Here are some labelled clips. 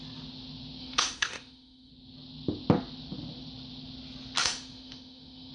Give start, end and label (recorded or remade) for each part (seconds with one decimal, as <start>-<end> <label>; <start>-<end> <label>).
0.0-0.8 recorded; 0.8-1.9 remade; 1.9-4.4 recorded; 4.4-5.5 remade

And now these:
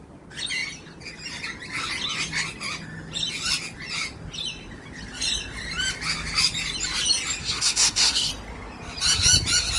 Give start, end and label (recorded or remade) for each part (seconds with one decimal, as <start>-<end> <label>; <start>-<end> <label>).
0.0-7.4 recorded; 7.4-8.3 remade; 8.3-9.8 recorded

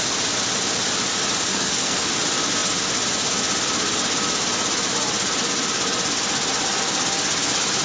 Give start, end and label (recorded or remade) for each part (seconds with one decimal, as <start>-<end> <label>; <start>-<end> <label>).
0.0-1.5 recorded; 1.5-2.1 remade; 2.1-7.8 recorded

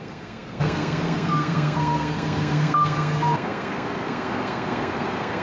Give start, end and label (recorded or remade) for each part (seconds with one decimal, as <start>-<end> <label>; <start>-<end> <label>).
0.0-5.4 remade

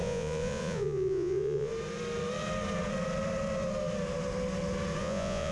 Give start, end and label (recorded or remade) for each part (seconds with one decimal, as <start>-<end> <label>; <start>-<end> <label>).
0.0-1.7 remade; 1.7-5.0 recorded; 5.0-5.5 remade

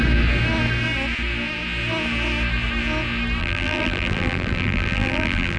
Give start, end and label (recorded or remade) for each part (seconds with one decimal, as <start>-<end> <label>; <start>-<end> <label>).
0.0-3.4 recorded; 3.4-5.6 remade

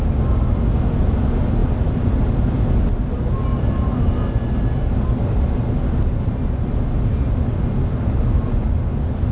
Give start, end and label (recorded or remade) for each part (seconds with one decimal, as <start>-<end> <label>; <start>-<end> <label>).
0.0-9.3 recorded

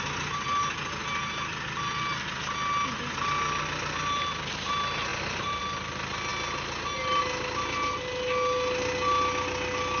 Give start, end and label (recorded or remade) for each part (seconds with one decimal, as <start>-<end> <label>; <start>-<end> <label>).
0.0-1.0 recorded; 1.0-2.0 remade; 2.0-5.1 recorded; 5.1-5.6 remade; 5.6-10.0 recorded